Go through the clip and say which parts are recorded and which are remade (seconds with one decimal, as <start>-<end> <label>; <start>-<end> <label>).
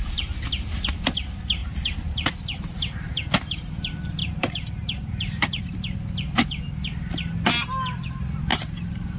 0.0-1.6 recorded; 1.6-2.3 remade; 2.3-4.2 recorded; 4.2-5.6 remade; 5.6-9.2 recorded